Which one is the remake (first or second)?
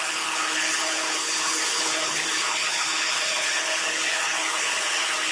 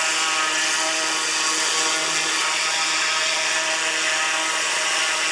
first